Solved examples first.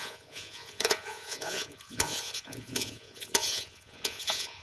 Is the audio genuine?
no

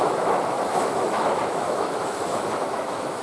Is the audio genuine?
no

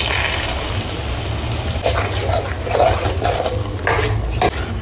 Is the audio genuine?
yes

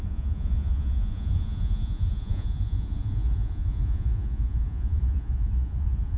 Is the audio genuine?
no